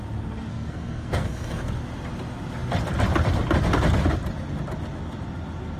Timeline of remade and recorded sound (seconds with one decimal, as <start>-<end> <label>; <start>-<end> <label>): 0.0-0.5 recorded; 0.5-1.8 remade; 1.8-5.8 recorded